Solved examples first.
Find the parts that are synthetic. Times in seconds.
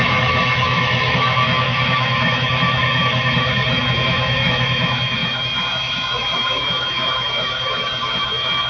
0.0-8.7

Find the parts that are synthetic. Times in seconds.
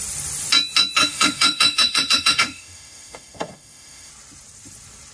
1.0-4.1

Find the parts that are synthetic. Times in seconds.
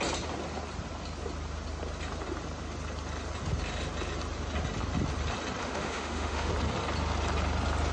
5.6-6.5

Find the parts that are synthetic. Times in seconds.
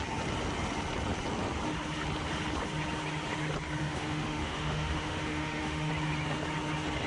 3.8-5.9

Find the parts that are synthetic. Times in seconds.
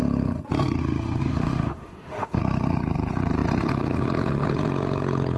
0.8-2.4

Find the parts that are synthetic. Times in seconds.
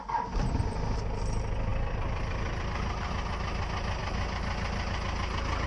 none